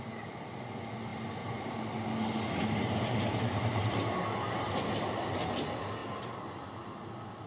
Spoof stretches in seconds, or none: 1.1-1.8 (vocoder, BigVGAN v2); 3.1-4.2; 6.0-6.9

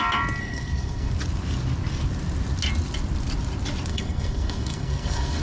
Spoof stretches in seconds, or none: 0.4-1.1 (codec, SNAC); 3.9-5.4

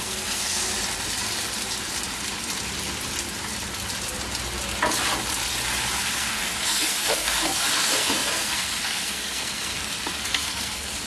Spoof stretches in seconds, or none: 0.0-0.7 (codec, SNAC); 6.0-11.1

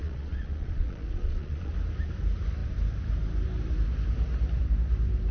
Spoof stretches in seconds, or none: 0.0-1.7 (vocoder, Vocos)

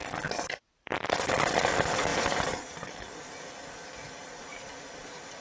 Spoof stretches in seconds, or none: none

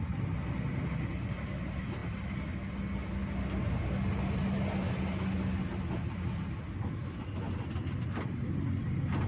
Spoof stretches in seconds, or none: none